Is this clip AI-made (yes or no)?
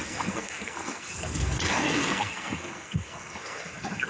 yes